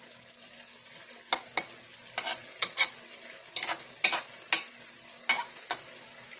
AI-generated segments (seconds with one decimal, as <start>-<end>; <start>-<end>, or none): none